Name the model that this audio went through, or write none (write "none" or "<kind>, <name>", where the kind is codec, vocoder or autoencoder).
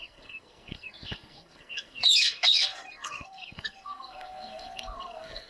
codec, SNAC